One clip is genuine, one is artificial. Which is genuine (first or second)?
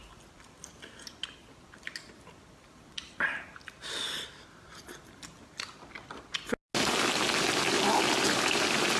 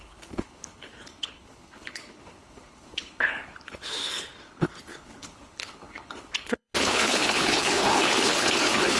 first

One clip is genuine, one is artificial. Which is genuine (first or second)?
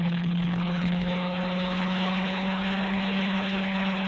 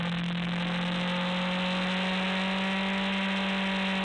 second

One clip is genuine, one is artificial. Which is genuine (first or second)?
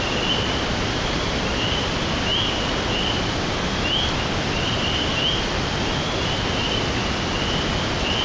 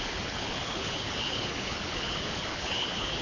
first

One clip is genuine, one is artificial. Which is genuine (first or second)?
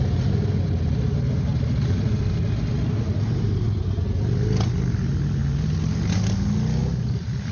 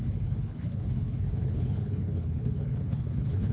first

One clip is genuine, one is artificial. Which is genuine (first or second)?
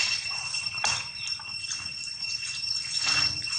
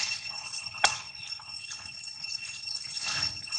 first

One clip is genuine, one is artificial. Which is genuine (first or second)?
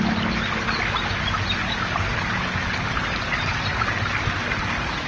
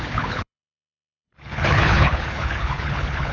first